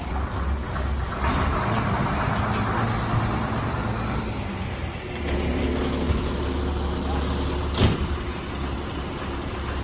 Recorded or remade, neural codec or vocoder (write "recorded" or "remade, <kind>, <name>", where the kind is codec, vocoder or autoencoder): recorded